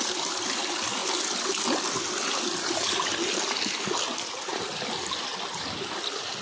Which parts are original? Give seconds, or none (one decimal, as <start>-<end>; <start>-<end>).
0.0-6.4